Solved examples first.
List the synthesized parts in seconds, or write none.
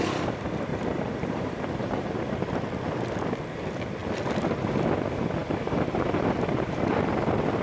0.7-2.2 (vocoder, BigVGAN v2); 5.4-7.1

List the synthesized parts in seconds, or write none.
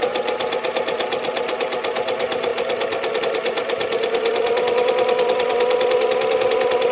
0.0-2.5 (vocoder, BigVGAN v2); 3.2-3.6; 4.3-6.9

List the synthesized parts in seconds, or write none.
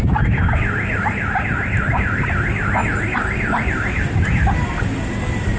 none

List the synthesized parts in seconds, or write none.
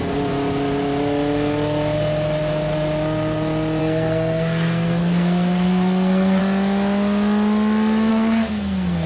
3.8-6.4 (codec, SNAC); 8.1-9.1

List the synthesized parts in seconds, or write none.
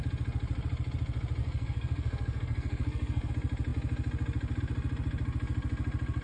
1.4-3.3 (codec, SNAC)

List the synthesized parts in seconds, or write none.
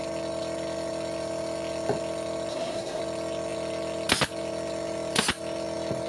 2.5-3.0 (codec, SNAC)